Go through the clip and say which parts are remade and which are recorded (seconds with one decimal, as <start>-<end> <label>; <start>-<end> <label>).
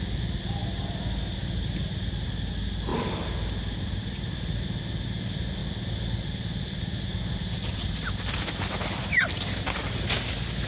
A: 0.0-10.7 recorded